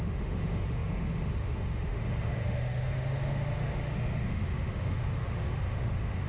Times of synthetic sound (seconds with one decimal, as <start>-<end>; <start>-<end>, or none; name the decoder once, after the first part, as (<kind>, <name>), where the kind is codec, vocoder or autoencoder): 0.0-6.3 (autoencoder, DAC-VAE)